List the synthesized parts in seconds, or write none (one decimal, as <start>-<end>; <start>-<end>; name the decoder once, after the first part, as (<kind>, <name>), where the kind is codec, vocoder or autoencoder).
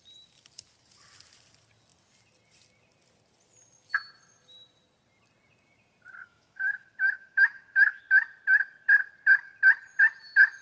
6.2-8.0 (autoencoder, DAC-VAE)